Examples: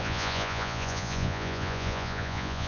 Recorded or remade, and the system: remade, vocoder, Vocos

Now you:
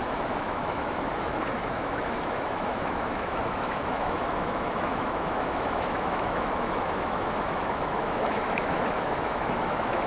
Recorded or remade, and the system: remade, autoencoder, DAC-VAE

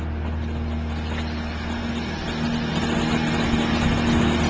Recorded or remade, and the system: recorded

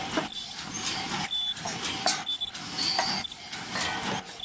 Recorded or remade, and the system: recorded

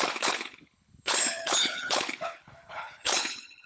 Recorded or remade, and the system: remade, codec, HILCodec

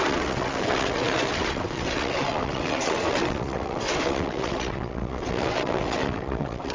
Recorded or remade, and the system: remade, vocoder, WaveNeXt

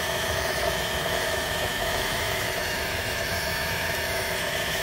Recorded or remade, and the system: remade, autoencoder, DAC-VAE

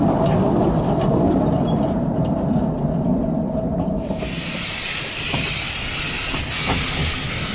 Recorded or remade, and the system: recorded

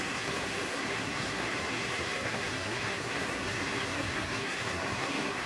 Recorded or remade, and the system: remade, codec, SNAC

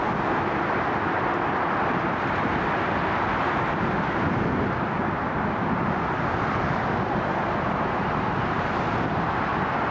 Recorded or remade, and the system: recorded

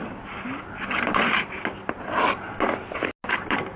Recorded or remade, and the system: recorded